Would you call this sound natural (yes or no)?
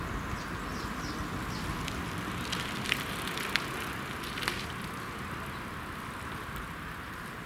yes